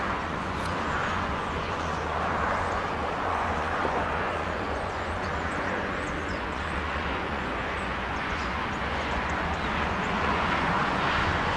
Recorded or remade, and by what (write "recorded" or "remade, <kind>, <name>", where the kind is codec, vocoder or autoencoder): remade, vocoder, Vocos